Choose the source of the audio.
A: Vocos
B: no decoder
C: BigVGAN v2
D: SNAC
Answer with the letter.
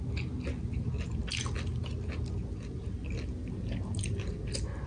B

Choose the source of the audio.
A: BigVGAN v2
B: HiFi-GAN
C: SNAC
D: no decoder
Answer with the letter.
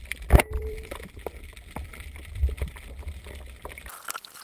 A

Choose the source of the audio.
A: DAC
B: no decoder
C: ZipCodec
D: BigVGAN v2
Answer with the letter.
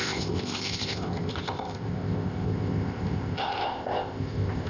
C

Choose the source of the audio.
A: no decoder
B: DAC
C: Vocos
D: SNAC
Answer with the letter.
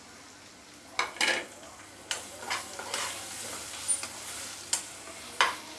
A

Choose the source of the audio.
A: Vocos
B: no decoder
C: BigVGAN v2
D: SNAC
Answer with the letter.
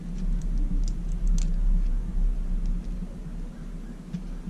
B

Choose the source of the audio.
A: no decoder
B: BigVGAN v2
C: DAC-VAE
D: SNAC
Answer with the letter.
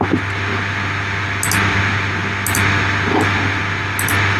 A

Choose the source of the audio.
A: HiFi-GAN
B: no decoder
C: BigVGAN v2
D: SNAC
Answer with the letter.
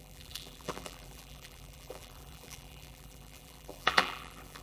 C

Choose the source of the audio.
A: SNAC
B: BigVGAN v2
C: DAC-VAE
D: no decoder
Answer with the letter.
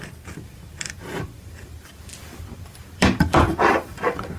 B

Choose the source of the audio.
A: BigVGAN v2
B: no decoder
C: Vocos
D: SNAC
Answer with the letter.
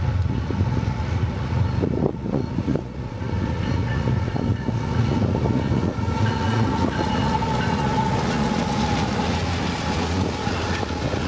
C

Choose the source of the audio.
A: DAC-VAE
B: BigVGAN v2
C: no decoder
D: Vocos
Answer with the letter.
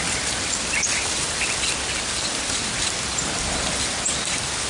C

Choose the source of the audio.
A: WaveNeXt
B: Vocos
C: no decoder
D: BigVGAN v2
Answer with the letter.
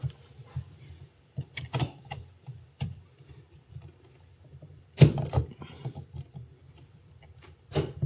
D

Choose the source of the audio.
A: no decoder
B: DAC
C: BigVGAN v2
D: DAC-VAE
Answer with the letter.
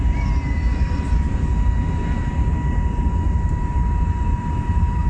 C